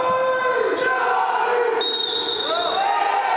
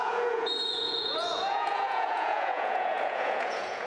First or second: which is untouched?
first